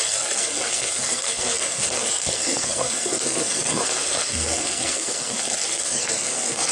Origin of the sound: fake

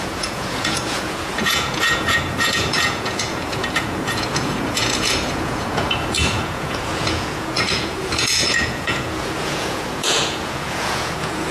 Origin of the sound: fake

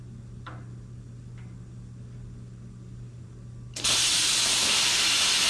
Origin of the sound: real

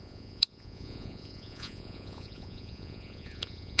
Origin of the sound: fake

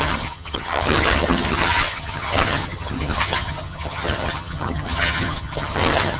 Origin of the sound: fake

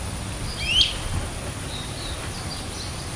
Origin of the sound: real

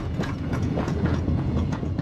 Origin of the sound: fake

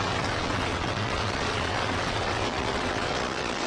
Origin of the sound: fake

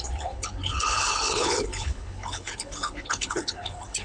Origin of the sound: fake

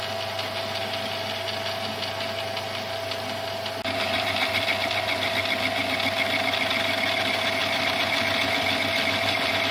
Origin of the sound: real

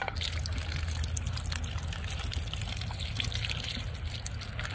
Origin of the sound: real